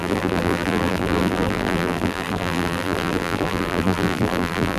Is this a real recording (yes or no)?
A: no